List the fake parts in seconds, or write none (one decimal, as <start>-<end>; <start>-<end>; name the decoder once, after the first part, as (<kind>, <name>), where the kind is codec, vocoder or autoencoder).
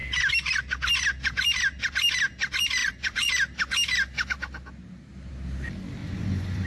2.8-3.3 (vocoder, Vocos); 6.0-6.7